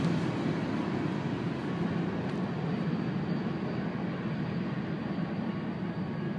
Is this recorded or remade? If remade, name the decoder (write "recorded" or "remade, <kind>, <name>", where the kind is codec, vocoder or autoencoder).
recorded